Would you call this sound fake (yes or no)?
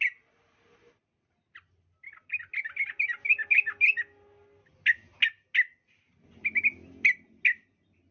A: no